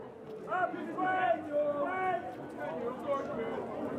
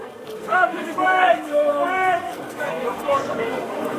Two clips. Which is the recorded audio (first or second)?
first